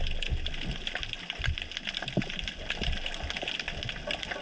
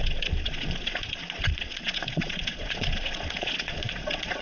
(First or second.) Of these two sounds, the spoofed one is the second